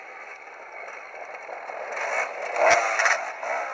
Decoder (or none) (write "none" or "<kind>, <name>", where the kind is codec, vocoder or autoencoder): none